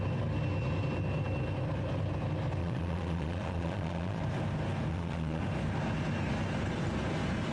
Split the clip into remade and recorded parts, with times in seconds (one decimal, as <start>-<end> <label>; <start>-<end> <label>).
0.0-2.6 recorded; 2.6-4.2 remade; 4.2-4.9 recorded; 4.9-5.4 remade; 5.4-7.5 recorded